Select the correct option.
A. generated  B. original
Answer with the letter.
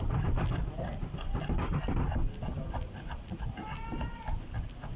B